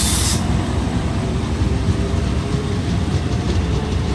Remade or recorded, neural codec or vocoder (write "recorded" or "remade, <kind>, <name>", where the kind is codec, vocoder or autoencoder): remade, vocoder, BigVGAN v2